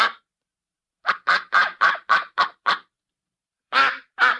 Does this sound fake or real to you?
fake